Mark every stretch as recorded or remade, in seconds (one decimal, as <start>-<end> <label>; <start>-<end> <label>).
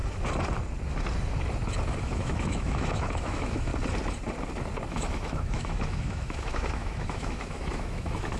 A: 0.0-2.0 recorded; 2.0-3.7 remade; 3.7-4.9 recorded; 4.9-8.4 remade